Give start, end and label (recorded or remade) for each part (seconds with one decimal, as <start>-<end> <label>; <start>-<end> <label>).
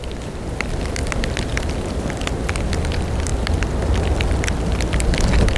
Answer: 0.0-5.6 recorded